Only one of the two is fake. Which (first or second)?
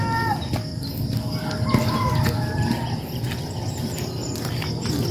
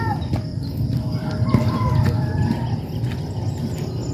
second